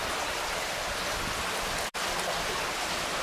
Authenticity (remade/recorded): recorded